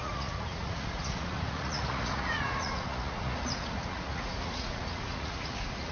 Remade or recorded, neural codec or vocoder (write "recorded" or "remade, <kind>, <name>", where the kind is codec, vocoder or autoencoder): remade, vocoder, Vocos